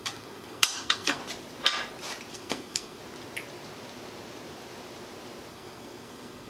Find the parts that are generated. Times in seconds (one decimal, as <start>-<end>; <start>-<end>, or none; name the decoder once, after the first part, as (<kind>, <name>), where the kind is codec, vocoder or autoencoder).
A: 0.0-1.2 (codec, SNAC); 2.3-3.0; 5.5-6.5